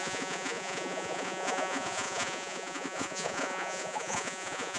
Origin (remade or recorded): remade